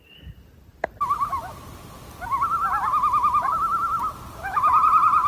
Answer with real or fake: real